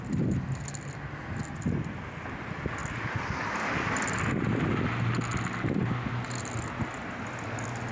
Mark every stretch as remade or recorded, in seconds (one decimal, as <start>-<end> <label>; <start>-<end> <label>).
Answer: 0.0-7.9 recorded